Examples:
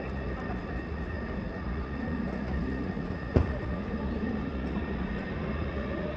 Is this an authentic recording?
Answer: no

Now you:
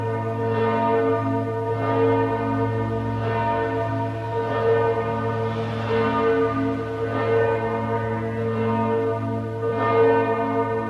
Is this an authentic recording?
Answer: yes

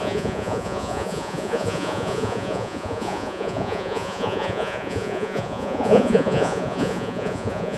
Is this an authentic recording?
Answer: no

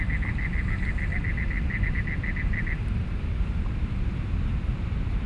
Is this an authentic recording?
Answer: yes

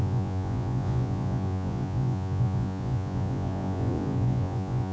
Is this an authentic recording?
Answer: no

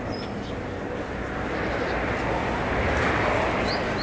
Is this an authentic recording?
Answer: yes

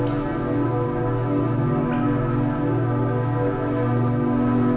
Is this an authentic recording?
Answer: yes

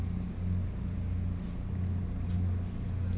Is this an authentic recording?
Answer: yes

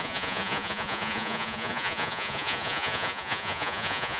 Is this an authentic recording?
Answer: no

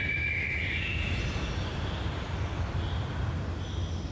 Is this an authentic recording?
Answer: yes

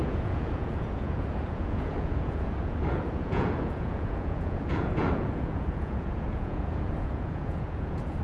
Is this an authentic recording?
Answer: no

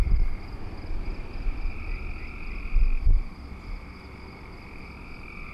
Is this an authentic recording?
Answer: yes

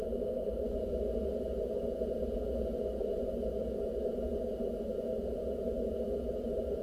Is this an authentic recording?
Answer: no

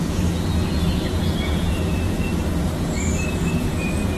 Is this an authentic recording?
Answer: no